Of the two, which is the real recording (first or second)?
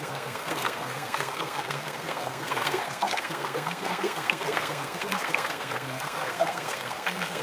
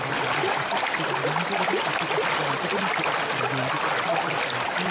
second